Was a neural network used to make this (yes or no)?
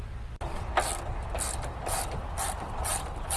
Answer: yes